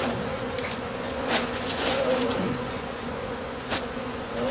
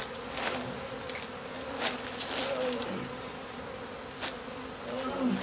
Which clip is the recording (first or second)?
second